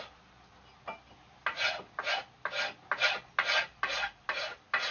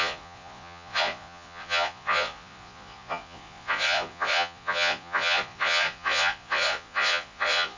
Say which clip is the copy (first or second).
second